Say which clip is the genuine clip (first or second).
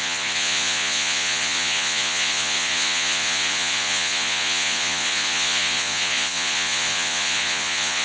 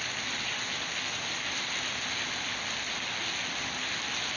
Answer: second